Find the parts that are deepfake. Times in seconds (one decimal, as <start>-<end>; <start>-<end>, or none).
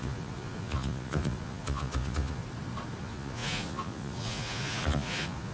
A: 0.0-2.4; 3.0-5.5